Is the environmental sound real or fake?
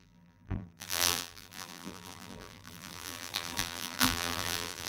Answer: fake